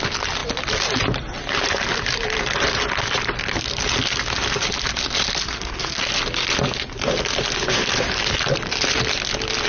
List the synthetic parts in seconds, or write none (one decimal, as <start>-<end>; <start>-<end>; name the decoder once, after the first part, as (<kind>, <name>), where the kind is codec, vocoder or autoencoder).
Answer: 5.4-6.0 (codec, SNAC)